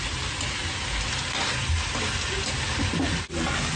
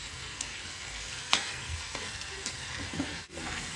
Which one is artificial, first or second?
second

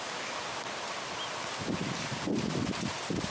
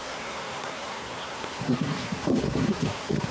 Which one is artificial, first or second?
second